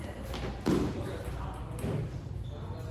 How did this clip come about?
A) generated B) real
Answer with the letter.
B